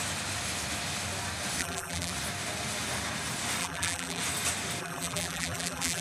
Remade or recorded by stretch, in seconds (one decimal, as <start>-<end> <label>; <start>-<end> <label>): 0.0-1.6 recorded; 1.6-2.1 remade; 2.1-3.6 recorded; 3.6-4.2 remade; 4.2-4.8 recorded; 4.8-6.0 remade